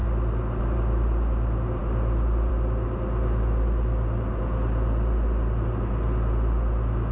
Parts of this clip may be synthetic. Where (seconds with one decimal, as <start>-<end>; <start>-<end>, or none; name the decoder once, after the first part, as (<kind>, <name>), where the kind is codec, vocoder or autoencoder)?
none